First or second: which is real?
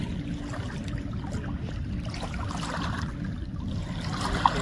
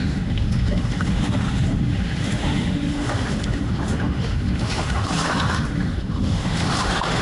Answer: first